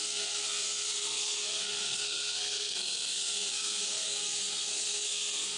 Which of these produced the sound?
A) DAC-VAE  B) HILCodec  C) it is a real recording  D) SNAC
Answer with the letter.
D